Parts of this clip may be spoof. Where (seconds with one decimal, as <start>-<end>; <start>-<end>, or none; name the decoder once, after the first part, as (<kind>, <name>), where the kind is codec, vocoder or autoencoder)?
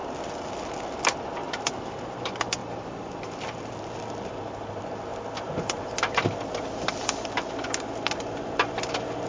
1.4-2.2 (vocoder, BigVGAN v2); 2.6-4.3; 5.1-9.3